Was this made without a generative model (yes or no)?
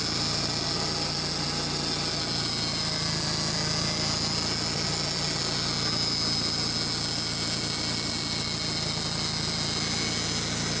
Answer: yes